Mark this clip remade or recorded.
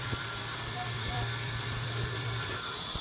remade